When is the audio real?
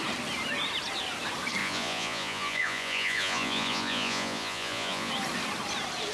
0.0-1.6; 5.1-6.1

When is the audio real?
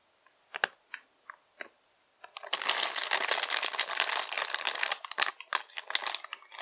0.0-6.6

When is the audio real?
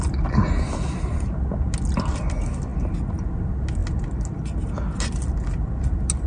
0.0-6.3